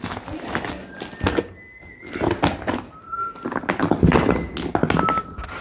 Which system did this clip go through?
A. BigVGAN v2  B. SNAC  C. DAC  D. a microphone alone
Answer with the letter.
D